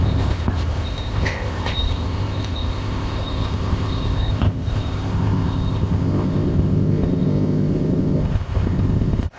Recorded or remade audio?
remade